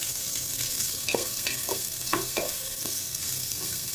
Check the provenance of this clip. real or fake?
fake